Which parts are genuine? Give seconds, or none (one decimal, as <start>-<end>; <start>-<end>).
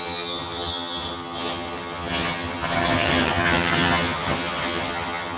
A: none